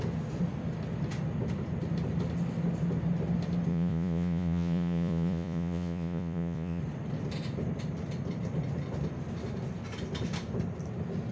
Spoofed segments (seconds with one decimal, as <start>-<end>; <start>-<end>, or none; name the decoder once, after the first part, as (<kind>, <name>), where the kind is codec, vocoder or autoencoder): 3.7-6.8 (vocoder, Vocos)